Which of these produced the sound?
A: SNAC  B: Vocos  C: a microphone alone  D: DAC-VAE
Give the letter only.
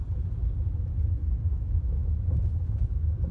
C